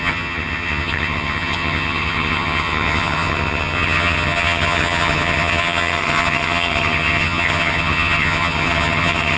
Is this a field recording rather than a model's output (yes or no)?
no